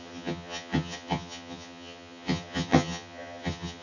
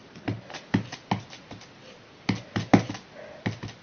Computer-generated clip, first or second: first